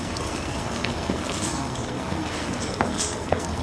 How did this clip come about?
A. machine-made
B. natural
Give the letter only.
A